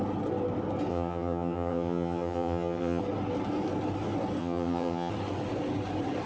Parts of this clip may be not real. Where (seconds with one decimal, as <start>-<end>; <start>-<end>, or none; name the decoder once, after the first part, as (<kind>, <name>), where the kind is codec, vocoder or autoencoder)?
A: 0.9-3.0 (vocoder, HiFi-GAN); 4.4-5.1